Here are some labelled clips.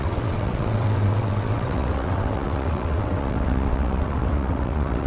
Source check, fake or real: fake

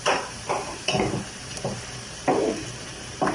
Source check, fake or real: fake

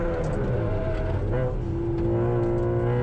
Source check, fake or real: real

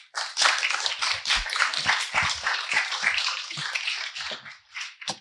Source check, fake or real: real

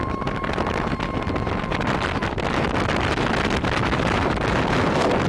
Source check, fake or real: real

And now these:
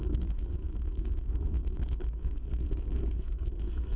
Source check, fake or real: fake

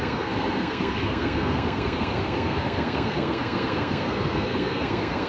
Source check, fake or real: fake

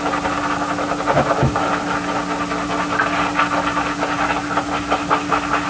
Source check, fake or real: real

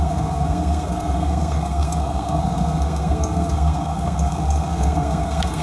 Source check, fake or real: fake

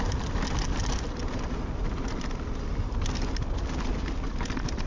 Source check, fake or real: real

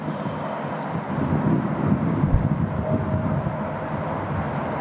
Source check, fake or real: real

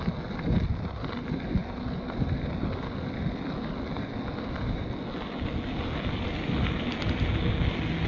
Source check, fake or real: real